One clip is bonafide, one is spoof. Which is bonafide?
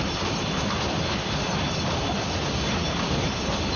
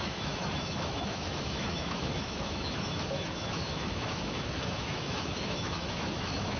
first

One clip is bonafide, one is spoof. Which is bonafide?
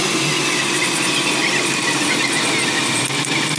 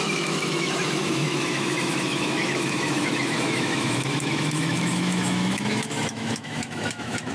first